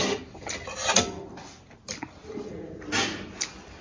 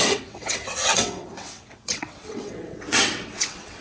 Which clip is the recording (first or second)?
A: first